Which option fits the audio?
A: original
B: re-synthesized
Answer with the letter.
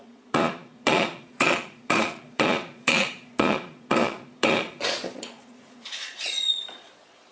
B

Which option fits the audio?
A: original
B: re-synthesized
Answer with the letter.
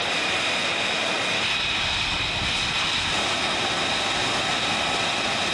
A